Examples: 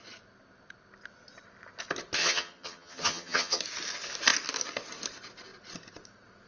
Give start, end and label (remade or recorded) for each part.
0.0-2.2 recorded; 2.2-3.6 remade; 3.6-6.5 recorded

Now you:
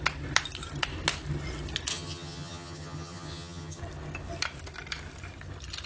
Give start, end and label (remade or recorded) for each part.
0.0-1.9 recorded; 1.9-3.8 remade; 3.8-5.9 recorded

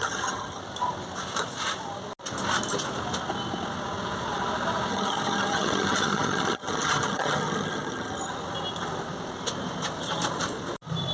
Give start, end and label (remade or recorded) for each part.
0.0-0.6 remade; 0.6-4.9 recorded; 4.9-8.3 remade; 8.3-11.1 recorded